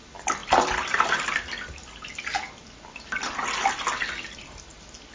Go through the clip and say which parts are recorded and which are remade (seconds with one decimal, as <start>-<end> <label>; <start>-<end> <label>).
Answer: 0.0-5.1 recorded